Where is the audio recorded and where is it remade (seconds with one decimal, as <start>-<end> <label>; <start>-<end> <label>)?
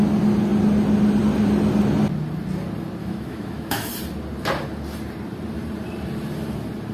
0.0-3.0 recorded; 3.0-3.9 remade; 3.9-6.9 recorded